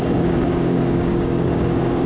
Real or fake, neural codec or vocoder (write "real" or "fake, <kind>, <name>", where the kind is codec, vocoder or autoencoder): fake, codec, DAC